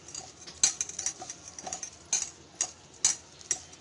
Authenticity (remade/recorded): recorded